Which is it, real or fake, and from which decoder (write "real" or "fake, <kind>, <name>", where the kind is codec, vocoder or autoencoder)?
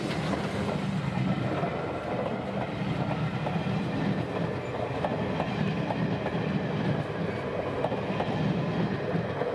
real